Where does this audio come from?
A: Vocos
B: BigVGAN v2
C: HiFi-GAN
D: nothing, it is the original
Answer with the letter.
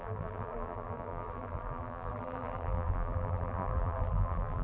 B